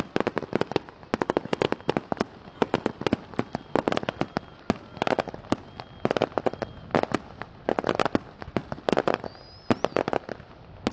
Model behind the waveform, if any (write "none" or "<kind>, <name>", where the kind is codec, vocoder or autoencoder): none